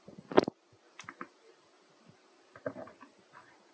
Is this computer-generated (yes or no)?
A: no